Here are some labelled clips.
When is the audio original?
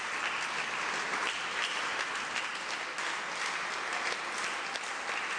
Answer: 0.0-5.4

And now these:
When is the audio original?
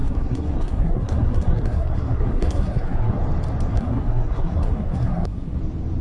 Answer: 3.2-3.7; 5.6-6.0